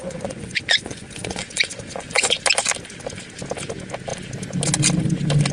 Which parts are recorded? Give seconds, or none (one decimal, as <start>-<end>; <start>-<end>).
2.4-5.5